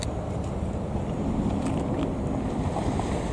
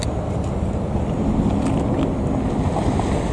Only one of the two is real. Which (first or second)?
second